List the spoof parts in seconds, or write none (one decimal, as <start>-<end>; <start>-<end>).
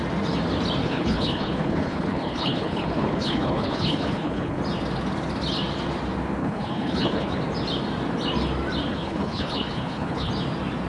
0.8-4.6; 6.4-7.4; 8.9-10.3